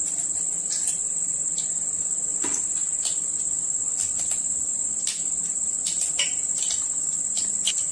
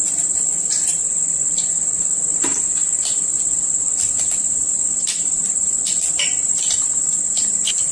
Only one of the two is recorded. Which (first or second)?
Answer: first